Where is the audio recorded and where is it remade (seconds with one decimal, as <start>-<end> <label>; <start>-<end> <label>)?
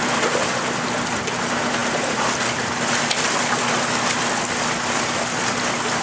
0.0-6.0 recorded